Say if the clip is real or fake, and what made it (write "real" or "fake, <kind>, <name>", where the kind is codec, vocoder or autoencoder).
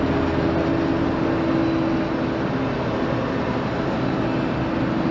real